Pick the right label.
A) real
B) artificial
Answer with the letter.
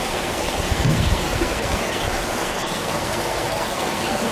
B